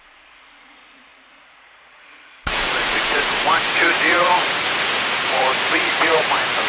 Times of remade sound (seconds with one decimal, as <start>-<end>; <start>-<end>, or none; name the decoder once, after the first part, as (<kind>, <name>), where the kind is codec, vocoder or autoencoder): 0.0-6.7 (vocoder, Vocos)